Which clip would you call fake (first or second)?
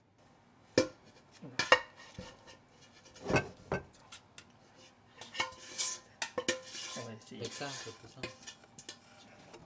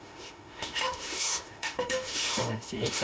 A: second